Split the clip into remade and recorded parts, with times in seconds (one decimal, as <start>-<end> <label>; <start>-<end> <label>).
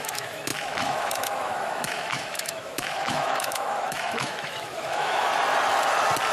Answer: 0.0-5.3 remade; 5.3-6.3 recorded